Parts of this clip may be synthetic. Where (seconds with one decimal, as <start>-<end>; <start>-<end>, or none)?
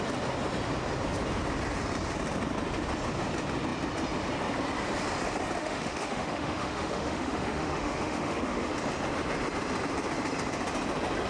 5.6-8.7